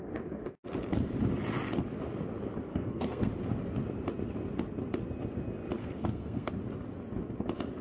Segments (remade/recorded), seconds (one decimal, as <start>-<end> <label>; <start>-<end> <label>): 0.0-2.7 recorded; 2.7-3.3 remade; 3.3-5.8 recorded; 5.8-6.5 remade; 6.5-7.8 recorded